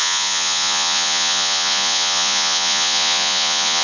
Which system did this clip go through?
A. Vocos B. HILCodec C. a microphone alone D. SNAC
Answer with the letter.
A